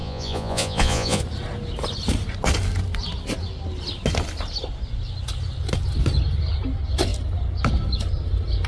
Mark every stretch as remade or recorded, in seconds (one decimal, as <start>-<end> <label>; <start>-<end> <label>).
0.0-1.2 remade; 1.2-8.7 recorded